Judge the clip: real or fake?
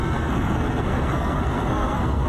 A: fake